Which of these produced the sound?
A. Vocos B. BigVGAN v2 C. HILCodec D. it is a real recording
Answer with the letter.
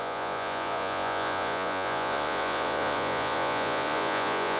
A